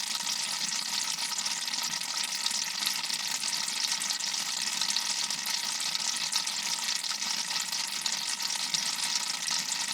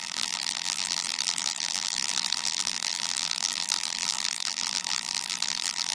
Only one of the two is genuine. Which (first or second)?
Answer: first